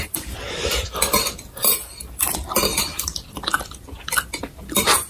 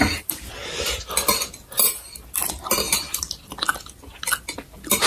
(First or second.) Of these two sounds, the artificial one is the first